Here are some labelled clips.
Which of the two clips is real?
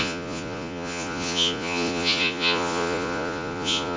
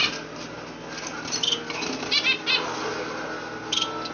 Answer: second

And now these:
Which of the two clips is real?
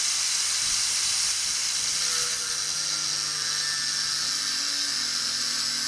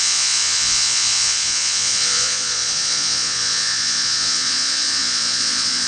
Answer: first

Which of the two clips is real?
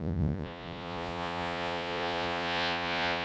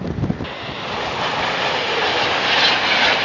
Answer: second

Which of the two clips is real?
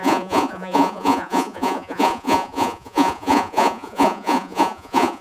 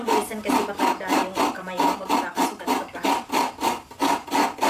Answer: second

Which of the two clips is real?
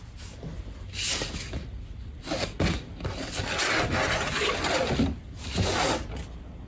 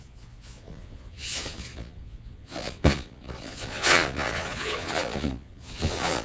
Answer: first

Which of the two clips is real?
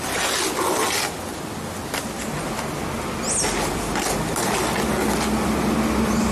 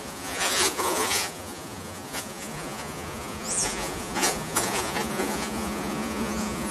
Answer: first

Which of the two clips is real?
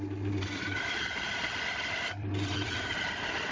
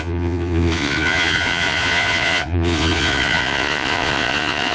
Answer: first